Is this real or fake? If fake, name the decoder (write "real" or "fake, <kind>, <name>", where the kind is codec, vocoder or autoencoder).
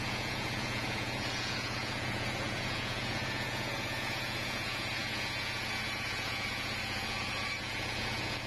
fake, vocoder, Vocos